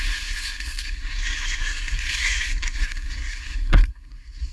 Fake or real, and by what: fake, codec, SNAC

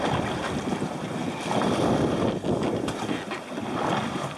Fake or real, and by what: real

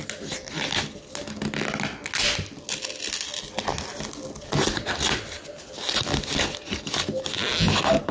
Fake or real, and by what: real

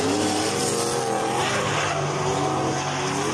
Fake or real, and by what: real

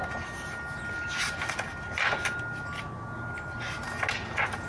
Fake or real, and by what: real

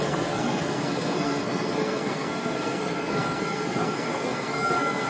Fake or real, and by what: fake, codec, SNAC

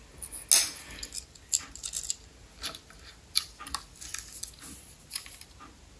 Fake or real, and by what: real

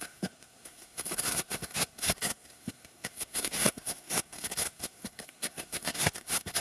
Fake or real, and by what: fake, codec, SNAC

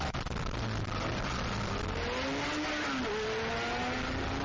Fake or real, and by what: real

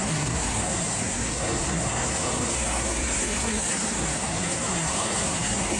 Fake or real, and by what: fake, codec, SNAC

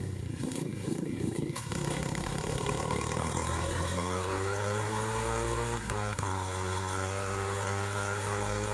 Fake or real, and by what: fake, codec, SNAC